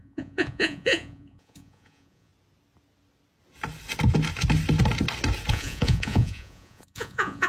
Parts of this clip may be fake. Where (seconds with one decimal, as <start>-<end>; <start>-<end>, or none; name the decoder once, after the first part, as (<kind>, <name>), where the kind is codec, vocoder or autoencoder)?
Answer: 0.0-2.3 (vocoder, Vocos); 5.5-7.5